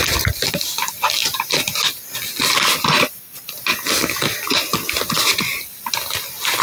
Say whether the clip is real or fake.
real